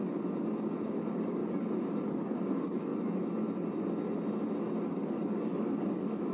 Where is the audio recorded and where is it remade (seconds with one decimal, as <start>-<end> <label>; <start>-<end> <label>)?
0.0-0.8 recorded; 0.8-1.4 remade; 1.4-2.1 recorded; 2.1-2.9 remade; 2.9-4.8 recorded; 4.8-6.3 remade